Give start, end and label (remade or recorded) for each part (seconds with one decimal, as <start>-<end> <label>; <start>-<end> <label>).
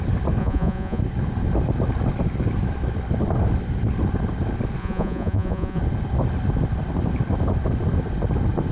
0.0-0.4 recorded; 0.4-1.0 remade; 1.0-4.8 recorded; 4.8-5.8 remade; 5.8-8.7 recorded